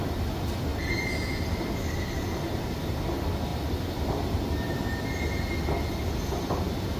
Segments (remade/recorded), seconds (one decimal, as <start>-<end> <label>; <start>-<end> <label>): 0.0-0.7 recorded; 0.7-1.3 remade; 1.3-3.5 recorded; 3.5-4.4 remade; 4.4-7.0 recorded